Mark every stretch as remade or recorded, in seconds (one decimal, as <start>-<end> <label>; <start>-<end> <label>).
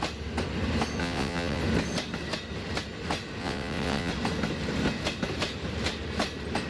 0.0-1.0 recorded; 1.0-1.6 remade; 1.6-3.4 recorded; 3.4-4.1 remade; 4.1-6.7 recorded